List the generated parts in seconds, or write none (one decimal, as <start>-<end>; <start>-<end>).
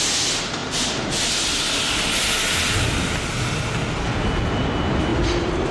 none